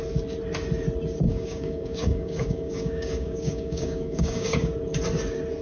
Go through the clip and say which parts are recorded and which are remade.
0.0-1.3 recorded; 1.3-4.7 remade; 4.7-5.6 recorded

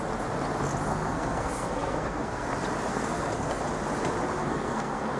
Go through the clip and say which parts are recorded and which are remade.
0.0-0.9 recorded; 0.9-2.5 remade; 2.5-2.9 recorded; 2.9-3.6 remade; 3.6-4.4 recorded; 4.4-5.2 remade

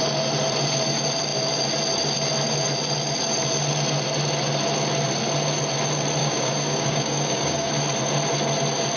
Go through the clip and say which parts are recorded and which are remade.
0.0-6.2 recorded; 6.2-7.7 remade; 7.7-9.0 recorded

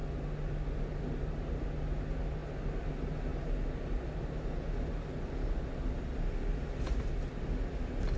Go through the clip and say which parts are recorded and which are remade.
0.0-8.2 recorded

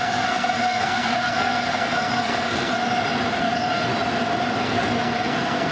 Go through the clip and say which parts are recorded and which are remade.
0.0-2.7 remade; 2.7-3.4 recorded; 3.4-3.9 remade; 3.9-4.6 recorded; 4.6-5.7 remade

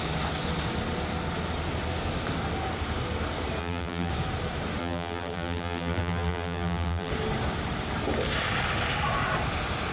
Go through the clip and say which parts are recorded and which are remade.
0.0-3.6 recorded; 3.6-4.1 remade; 4.1-4.8 recorded; 4.8-7.1 remade; 7.1-9.9 recorded

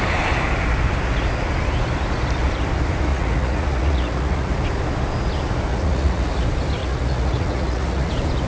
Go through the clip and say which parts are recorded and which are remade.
0.0-3.1 recorded; 3.1-4.5 remade; 4.5-5.7 recorded; 5.7-6.3 remade; 6.3-6.8 recorded; 6.8-8.1 remade; 8.1-8.5 recorded